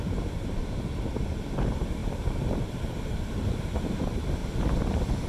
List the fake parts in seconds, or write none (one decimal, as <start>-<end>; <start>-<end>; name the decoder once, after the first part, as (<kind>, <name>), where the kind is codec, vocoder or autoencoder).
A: 0.0-4.4 (vocoder, BigVGAN v2)